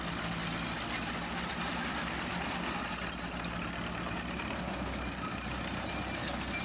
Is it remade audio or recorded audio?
recorded